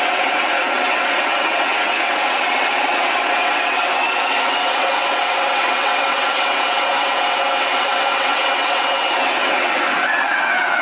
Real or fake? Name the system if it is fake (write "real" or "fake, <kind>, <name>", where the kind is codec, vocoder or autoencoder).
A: fake, vocoder, WaveNeXt